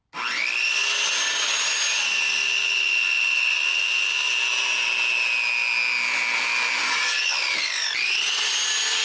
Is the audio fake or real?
real